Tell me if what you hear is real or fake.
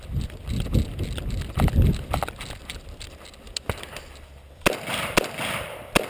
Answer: real